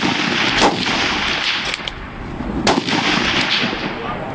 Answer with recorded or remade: recorded